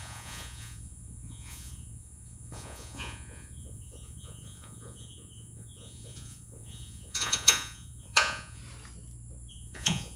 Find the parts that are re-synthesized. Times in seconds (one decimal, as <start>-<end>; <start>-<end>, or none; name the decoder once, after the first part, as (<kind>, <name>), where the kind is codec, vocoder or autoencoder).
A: 0.0-8.6 (vocoder, Vocos); 9.5-10.2